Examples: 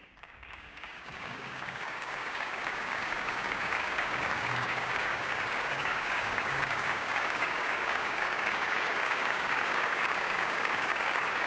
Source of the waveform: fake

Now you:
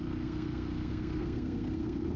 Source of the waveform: fake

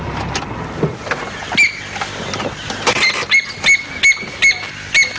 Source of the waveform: real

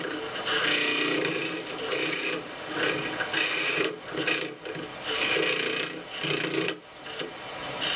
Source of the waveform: real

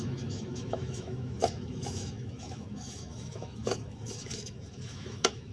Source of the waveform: fake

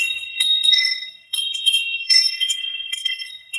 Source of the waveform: fake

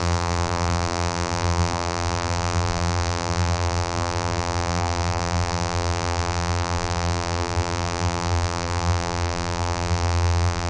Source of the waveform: fake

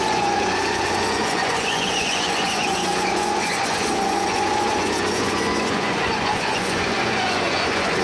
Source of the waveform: fake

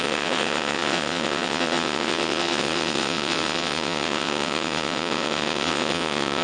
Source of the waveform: fake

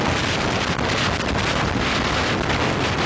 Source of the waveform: real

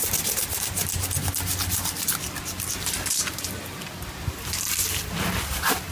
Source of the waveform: real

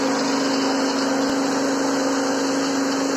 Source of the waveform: real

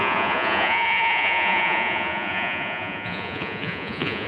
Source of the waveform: fake